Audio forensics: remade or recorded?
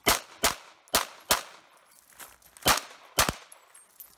recorded